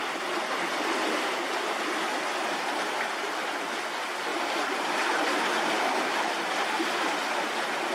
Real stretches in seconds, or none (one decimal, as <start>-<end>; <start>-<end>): 0.0-7.9